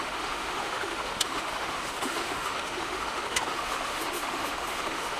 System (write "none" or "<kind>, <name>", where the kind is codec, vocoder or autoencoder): autoencoder, DAC-VAE